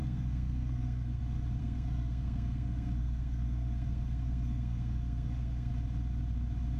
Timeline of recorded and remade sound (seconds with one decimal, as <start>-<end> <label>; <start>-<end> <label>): 0.0-1.2 remade; 1.2-1.6 recorded; 1.6-5.7 remade; 5.7-6.8 recorded